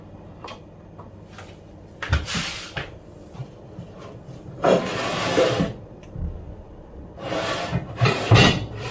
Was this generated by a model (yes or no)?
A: yes